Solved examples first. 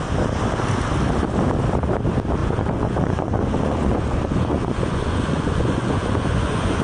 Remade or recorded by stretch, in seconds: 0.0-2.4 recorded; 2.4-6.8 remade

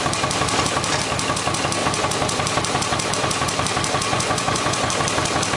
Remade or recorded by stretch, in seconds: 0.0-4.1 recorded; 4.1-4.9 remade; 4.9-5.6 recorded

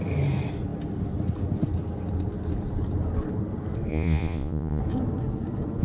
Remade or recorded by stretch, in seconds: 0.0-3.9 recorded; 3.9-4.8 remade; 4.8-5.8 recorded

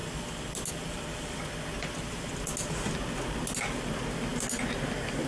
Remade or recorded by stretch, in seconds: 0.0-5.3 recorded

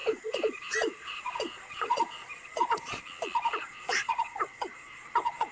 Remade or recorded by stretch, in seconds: 0.0-3.0 remade; 3.0-3.6 recorded; 3.6-5.5 remade

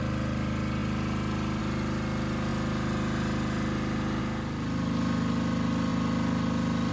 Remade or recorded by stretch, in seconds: 0.0-6.9 recorded